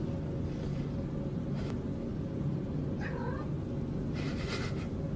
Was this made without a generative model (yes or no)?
yes